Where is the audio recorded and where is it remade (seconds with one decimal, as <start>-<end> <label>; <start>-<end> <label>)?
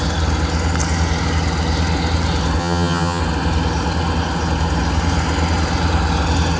0.0-2.6 recorded; 2.6-3.2 remade; 3.2-6.6 recorded